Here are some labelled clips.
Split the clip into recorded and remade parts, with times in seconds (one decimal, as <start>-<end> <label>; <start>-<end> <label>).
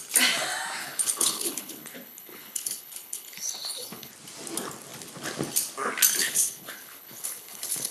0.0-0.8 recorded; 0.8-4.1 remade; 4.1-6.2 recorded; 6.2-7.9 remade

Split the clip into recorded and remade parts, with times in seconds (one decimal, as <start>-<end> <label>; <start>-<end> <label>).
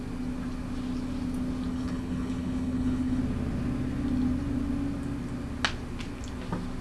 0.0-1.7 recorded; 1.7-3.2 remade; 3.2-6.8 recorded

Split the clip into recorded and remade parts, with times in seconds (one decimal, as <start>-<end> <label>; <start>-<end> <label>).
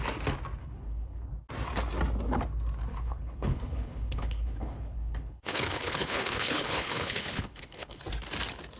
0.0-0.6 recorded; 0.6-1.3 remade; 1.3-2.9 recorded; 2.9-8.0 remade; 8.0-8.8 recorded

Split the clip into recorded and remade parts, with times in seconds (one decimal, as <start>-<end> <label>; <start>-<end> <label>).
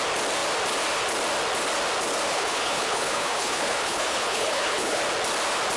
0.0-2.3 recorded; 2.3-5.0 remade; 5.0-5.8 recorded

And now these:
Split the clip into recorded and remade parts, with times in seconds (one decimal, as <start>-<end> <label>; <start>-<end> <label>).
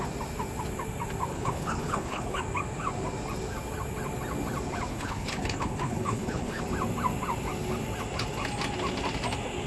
0.0-1.3 recorded; 1.3-2.4 remade; 2.4-4.9 recorded; 4.9-6.6 remade; 6.6-9.7 recorded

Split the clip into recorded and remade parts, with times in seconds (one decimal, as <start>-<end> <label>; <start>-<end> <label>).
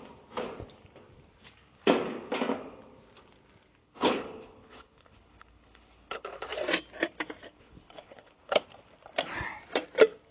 0.0-3.8 recorded; 3.8-6.5 remade; 6.5-7.5 recorded; 7.5-8.6 remade; 8.6-10.3 recorded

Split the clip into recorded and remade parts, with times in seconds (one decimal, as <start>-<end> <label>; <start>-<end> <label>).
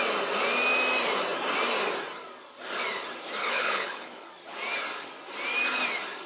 0.0-3.4 recorded; 3.4-4.3 remade; 4.3-6.3 recorded